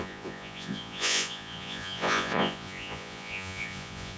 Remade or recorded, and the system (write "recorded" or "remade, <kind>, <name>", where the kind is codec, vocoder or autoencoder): remade, vocoder, Vocos